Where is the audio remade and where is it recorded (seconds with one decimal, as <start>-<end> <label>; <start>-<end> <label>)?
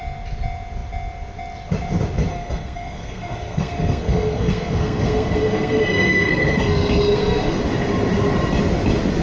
0.0-2.3 recorded; 2.3-7.6 remade; 7.6-9.2 recorded